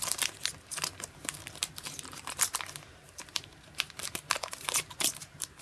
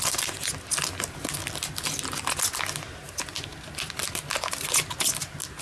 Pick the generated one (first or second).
first